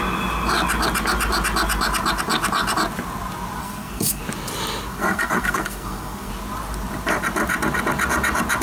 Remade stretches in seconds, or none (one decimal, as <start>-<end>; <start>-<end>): 3.6-4.2; 4.9-6.3